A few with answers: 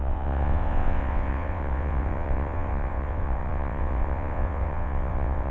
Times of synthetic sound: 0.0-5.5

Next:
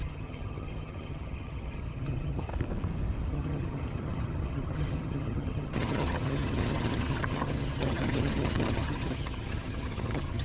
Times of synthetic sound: 0.0-2.5; 3.3-10.4

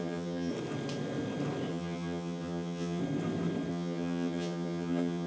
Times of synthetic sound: 0.0-0.5; 1.7-3.0; 3.7-5.3

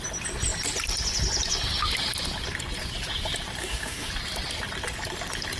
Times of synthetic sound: 3.6-4.1

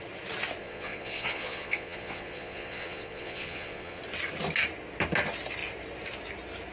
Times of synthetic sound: 0.6-4.0

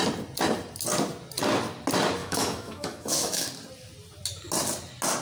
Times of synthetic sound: 2.2-3.5

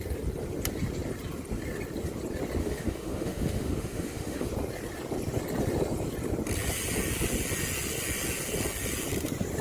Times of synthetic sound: 2.6-4.5

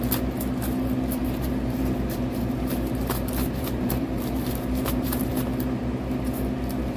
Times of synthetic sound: 1.2-5.3